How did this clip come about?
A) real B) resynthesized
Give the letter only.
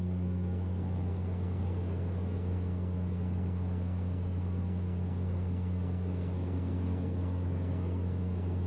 B